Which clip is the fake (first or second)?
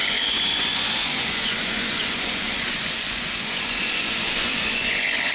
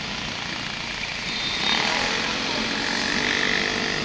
first